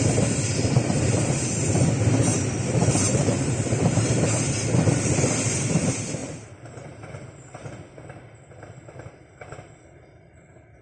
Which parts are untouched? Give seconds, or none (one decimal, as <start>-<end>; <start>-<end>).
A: 0.0-2.3; 4.3-6.2; 7.5-10.8